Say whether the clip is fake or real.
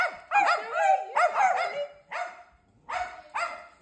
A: real